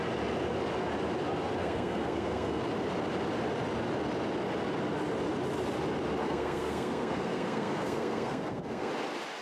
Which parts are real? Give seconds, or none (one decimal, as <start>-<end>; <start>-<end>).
0.0-1.6; 2.6-6.2; 8.9-9.4